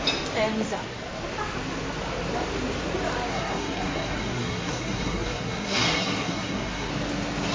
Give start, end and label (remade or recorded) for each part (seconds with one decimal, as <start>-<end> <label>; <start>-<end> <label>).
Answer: 0.0-3.3 recorded; 3.3-6.9 remade; 6.9-7.5 recorded